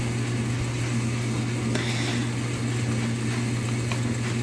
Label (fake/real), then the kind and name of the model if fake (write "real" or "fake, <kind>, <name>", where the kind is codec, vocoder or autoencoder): real